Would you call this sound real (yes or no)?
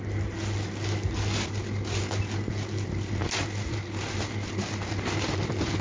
yes